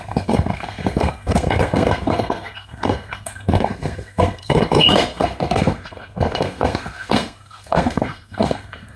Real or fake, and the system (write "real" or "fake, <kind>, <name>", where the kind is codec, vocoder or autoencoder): fake, codec, SNAC